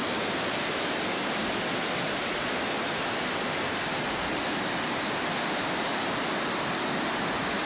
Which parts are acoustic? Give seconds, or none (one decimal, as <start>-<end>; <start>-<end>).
0.0-1.4; 4.6-7.7